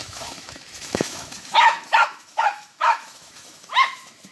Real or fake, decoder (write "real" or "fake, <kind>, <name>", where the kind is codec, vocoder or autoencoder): fake, autoencoder, DAC-VAE